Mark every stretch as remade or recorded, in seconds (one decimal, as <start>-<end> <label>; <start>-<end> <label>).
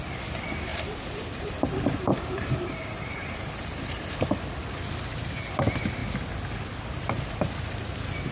0.0-0.7 recorded; 0.7-4.6 remade; 4.6-8.3 recorded